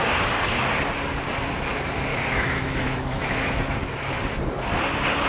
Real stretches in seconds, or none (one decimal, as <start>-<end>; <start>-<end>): 0.0-2.1; 4.2-5.3